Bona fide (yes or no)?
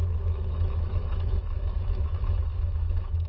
no